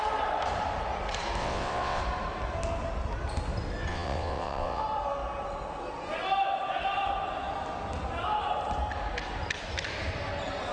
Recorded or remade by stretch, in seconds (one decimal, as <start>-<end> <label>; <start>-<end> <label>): 0.0-1.4 recorded; 1.4-2.0 remade; 2.0-3.9 recorded; 3.9-4.8 remade; 4.8-10.7 recorded